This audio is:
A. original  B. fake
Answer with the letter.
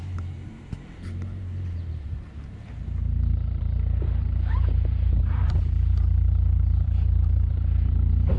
B